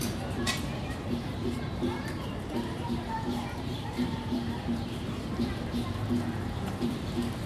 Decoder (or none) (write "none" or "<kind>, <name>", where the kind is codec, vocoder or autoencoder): vocoder, BigVGAN v2